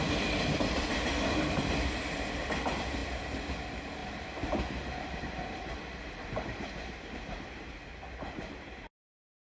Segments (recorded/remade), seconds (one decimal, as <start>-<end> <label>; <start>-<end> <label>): 0.0-4.0 recorded; 4.0-9.4 remade